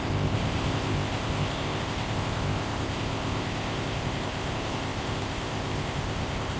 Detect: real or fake fake